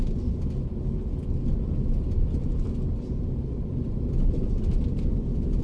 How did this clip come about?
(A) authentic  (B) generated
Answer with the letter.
A